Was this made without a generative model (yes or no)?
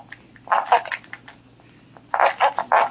yes